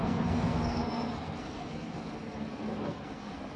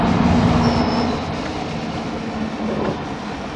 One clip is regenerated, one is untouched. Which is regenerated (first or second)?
first